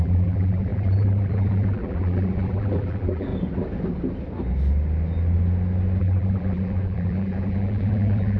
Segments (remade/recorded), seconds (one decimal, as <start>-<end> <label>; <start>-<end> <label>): 0.0-3.3 remade; 3.3-6.0 recorded; 6.0-8.4 remade